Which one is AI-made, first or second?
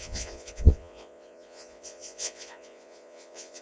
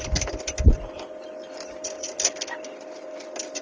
first